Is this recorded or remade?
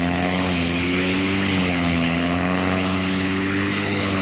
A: remade